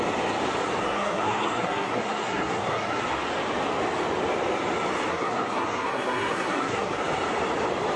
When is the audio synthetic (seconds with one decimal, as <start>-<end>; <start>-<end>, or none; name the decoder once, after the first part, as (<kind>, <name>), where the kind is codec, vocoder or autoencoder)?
0.8-3.0 (codec, SNAC); 5.1-7.0